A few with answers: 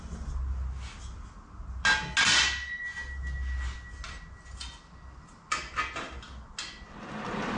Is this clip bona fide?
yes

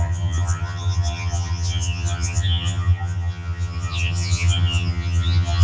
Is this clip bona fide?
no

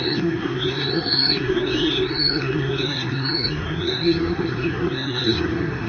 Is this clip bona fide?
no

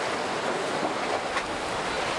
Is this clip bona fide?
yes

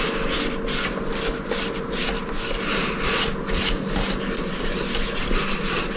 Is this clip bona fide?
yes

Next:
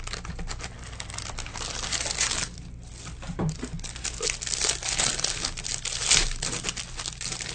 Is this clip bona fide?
yes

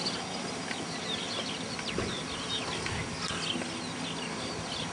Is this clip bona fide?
yes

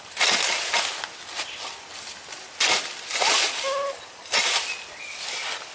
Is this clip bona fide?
yes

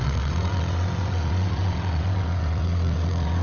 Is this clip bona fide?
no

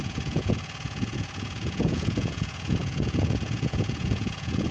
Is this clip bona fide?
no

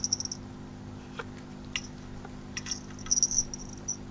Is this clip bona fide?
yes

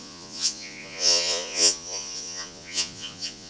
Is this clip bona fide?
no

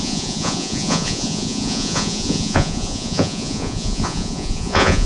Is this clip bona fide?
no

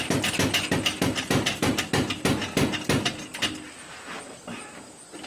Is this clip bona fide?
yes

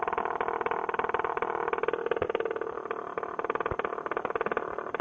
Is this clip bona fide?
yes